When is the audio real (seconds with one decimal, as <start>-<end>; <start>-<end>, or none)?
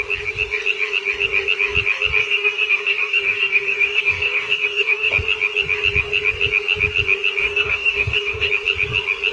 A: 0.0-2.2; 5.1-7.4; 8.5-9.3